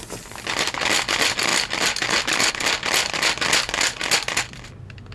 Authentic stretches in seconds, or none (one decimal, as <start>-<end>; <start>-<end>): 0.0-5.1